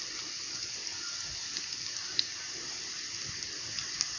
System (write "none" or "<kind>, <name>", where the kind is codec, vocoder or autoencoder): none